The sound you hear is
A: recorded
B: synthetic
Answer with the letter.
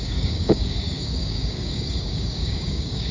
B